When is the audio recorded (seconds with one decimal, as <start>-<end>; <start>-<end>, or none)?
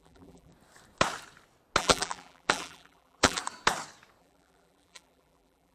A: 0.5-1.8; 3.4-4.2